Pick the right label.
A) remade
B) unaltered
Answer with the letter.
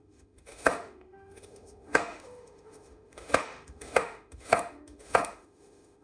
A